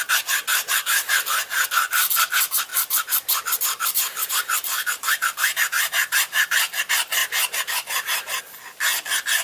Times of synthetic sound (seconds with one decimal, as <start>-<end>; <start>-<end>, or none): 0.5-1.1; 2.7-6.8; 7.2-8.4